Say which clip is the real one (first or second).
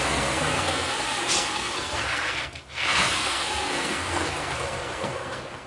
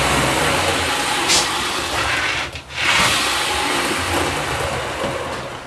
second